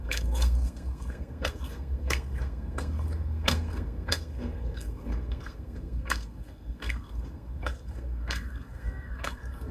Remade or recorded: remade